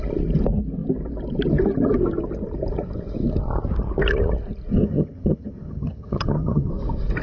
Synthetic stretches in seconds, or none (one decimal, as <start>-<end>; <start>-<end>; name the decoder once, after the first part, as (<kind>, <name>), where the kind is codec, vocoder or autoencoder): 4.7-6.7 (vocoder, HiFi-GAN)